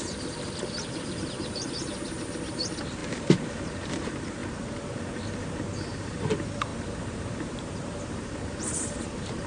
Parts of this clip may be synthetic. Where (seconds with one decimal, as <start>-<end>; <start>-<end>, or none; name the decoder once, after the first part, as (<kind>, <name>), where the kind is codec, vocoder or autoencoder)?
0.0-4.4 (vocoder, BigVGAN v2); 5.6-9.5